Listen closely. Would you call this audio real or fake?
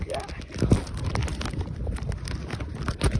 real